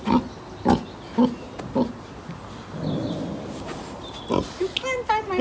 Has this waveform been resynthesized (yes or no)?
no